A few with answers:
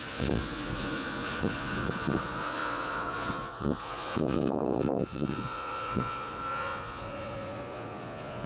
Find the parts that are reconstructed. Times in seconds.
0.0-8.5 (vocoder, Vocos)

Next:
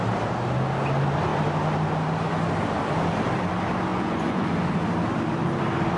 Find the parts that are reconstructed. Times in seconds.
3.9-4.5 (vocoder, Vocos)

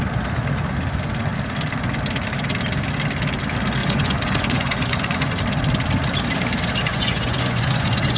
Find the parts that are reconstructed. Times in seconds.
3.8-5.4 (vocoder, Vocos); 6.9-8.2

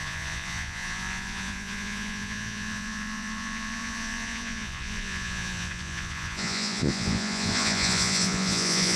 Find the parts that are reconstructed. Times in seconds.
0.0-9.0 (vocoder, Vocos)

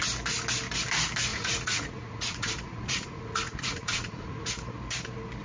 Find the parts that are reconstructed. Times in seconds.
1.3-4.5 (vocoder, Vocos)

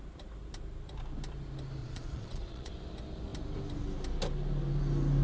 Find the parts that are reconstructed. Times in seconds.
1.8-2.7 (vocoder, Vocos)

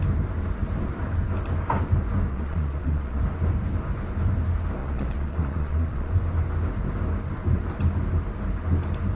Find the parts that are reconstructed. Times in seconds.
2.3-3.2 (vocoder, Vocos); 4.8-6.1

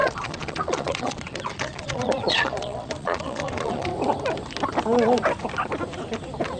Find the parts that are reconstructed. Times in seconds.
0.0-3.9 (vocoder, Vocos)